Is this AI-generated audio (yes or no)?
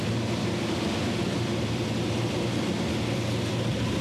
yes